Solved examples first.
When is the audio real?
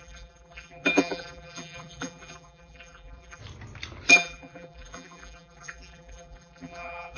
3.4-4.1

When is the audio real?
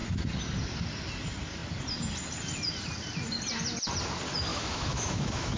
0.0-4.5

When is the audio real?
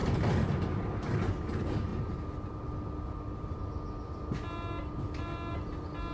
0.0-6.1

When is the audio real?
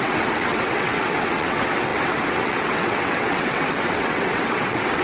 none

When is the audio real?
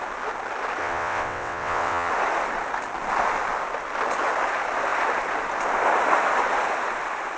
0.0-0.8; 2.1-7.4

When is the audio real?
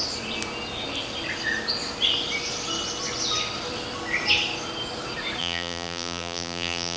0.0-5.4